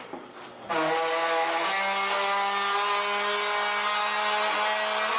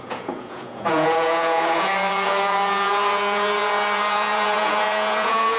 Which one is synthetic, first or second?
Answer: second